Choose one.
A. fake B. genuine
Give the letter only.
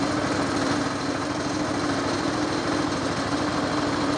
B